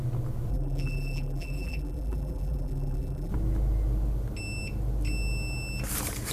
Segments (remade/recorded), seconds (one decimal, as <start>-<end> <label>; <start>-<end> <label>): 0.0-0.5 recorded; 0.5-3.3 remade; 3.3-6.3 recorded